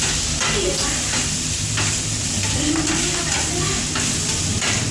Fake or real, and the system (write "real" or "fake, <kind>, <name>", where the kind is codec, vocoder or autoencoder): real